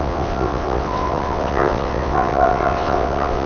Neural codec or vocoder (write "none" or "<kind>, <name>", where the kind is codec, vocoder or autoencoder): vocoder, WaveNeXt